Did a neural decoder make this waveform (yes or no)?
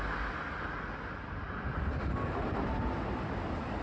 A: no